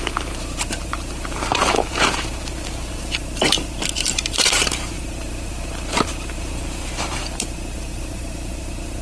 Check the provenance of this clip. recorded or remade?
remade